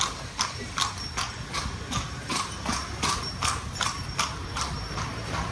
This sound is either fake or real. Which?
real